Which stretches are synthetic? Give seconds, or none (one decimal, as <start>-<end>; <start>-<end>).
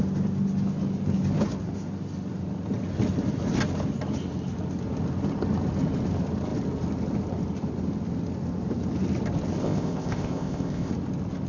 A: 9.6-10.9